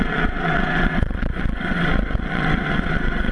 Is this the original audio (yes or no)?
no